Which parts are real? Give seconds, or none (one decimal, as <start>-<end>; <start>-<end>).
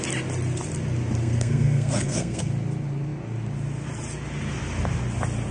0.0-1.2; 2.5-5.5